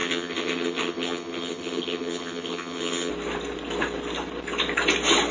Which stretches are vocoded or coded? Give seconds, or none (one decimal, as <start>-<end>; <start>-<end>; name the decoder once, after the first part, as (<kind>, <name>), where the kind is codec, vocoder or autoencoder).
0.0-3.1 (vocoder, HiFi-GAN)